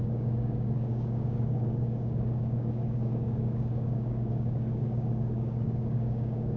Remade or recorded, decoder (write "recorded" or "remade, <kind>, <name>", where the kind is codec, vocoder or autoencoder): remade, codec, DAC